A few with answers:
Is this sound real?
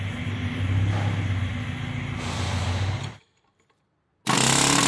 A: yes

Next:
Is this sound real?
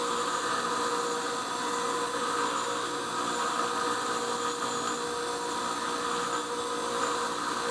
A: yes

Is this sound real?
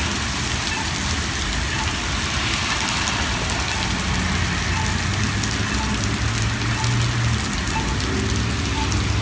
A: yes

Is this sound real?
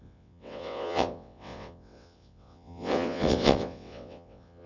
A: no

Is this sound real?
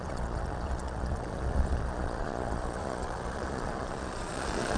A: no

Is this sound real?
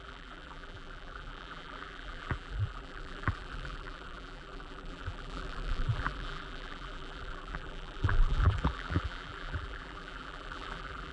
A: no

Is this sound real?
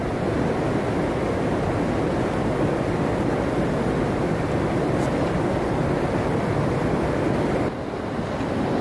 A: yes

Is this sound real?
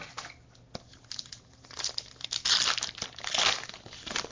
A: yes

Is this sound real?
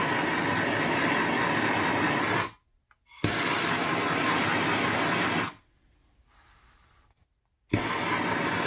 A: yes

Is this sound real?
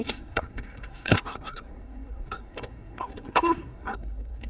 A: no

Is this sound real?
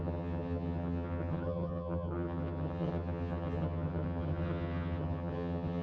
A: no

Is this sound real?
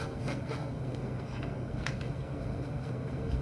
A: no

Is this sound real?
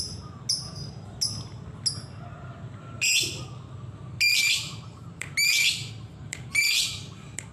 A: yes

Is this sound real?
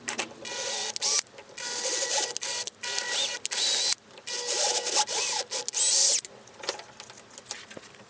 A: yes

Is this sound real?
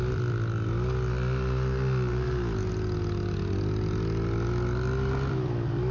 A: yes